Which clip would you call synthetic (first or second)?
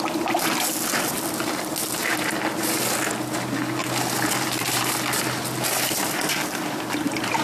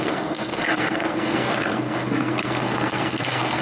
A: second